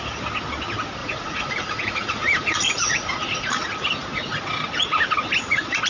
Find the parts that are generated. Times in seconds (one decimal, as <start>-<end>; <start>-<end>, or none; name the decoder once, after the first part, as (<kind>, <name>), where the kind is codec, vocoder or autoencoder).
1.0-3.5 (vocoder, Vocos)